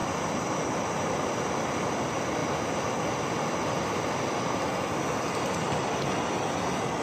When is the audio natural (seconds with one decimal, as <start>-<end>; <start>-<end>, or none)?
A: 0.0-7.0